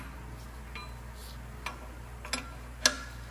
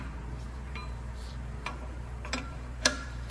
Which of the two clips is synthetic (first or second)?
second